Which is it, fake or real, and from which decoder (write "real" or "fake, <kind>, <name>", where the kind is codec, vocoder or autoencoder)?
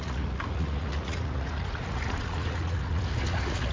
fake, vocoder, Vocos